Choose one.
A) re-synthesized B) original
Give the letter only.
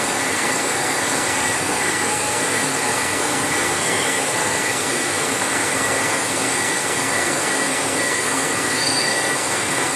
A